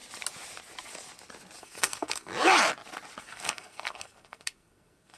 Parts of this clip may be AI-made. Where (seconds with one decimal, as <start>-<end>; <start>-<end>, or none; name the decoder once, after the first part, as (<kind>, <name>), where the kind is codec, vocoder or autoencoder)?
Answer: 1.6-2.3 (codec, SNAC); 3.2-5.2